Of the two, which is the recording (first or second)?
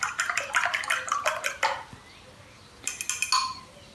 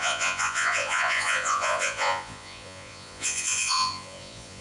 first